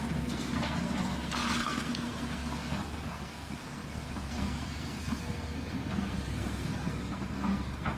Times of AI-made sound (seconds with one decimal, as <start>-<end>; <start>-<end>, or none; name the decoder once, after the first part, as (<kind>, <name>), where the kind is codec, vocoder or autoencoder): 0.0-8.0 (codec, SNAC)